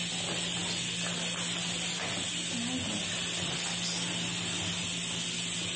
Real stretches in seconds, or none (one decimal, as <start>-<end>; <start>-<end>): 0.0-5.8